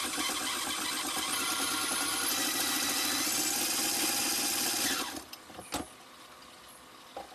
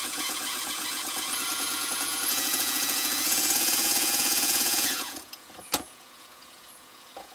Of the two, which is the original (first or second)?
first